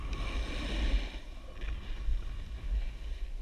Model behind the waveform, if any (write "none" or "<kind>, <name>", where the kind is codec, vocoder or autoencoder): none